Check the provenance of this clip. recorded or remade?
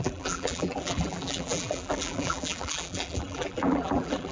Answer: remade